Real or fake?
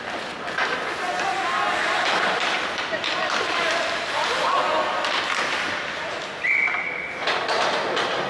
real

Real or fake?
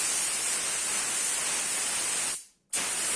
real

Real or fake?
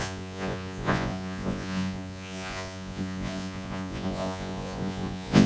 fake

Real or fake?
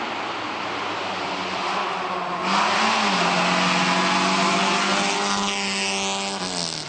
real